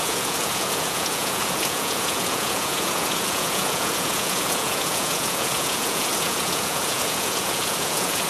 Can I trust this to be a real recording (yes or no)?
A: no